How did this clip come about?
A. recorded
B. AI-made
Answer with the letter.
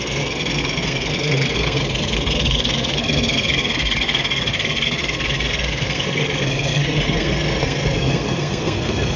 B